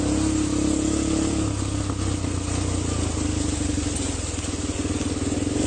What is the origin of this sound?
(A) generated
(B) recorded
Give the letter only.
B